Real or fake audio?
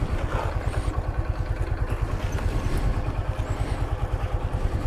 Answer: real